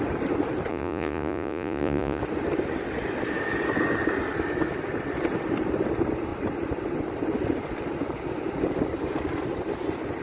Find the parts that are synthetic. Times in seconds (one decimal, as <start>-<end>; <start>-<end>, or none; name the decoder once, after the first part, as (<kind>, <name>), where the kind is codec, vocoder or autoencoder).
0.7-2.2 (vocoder, Vocos)